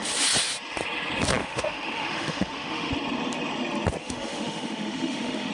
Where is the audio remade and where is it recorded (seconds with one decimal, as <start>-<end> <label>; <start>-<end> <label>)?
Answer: 0.0-1.4 recorded; 1.4-2.9 remade; 2.9-4.0 recorded; 4.0-5.5 remade